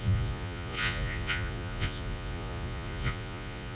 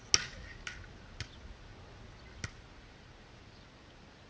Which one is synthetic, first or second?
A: first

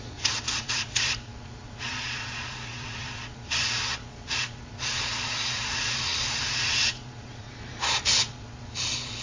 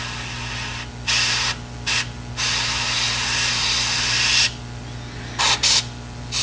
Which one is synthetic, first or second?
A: first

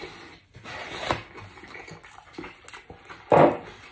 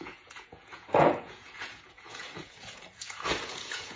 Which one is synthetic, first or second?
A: second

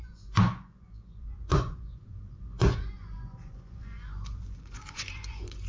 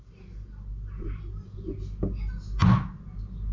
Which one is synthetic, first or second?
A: first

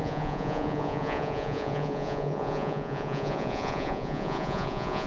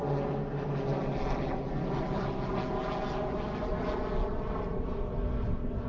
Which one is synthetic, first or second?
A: first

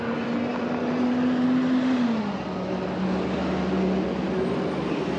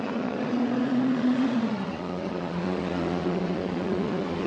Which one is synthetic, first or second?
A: second